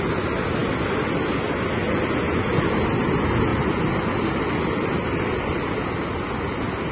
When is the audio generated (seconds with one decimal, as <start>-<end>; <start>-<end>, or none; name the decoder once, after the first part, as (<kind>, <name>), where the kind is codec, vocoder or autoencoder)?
none